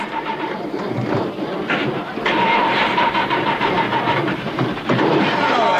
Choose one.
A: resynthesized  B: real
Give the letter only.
A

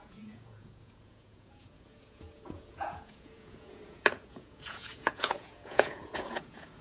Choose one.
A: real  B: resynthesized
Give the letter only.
B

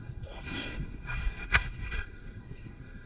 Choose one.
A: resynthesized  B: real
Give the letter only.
A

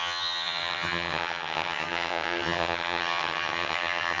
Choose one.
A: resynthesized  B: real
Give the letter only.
A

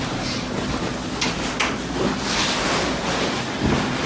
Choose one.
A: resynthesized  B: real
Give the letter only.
B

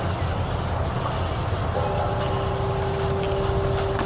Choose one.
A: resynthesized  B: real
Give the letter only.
B